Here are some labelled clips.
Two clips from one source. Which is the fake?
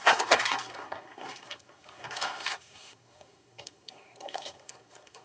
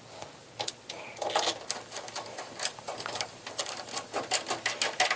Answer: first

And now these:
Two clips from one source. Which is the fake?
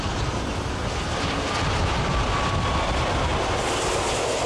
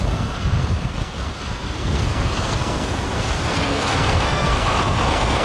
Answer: second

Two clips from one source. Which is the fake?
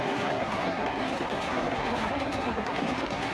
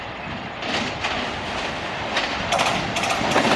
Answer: first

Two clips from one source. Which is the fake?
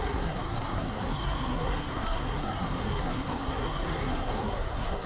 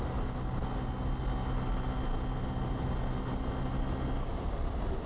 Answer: first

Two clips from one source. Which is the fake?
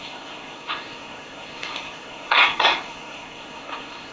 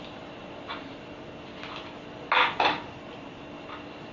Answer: first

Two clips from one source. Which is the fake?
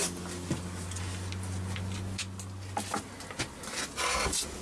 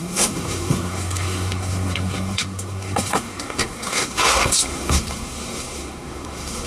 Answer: second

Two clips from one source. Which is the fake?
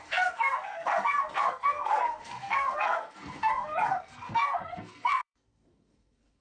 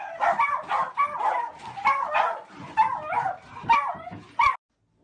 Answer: first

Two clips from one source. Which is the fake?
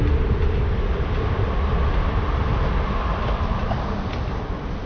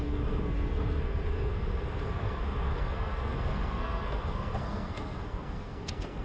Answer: second